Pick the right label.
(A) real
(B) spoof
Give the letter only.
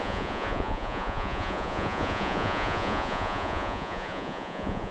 B